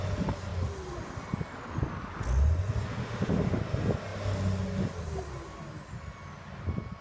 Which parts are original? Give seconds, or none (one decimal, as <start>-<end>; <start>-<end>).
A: 0.0-3.0; 3.6-7.0